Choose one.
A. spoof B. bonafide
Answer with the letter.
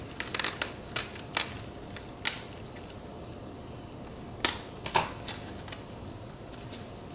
B